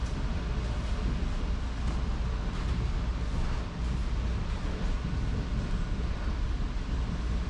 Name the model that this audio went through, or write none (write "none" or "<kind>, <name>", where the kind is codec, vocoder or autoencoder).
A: none